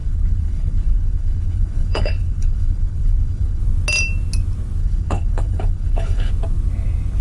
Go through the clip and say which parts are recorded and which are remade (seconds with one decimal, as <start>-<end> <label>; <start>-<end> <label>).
0.0-3.6 remade; 3.6-4.8 recorded; 4.8-6.3 remade; 6.3-7.2 recorded